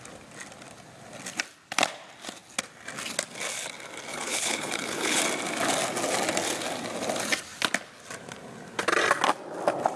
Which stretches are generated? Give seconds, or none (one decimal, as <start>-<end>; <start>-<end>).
4.1-5.2